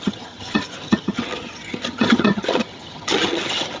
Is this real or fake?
fake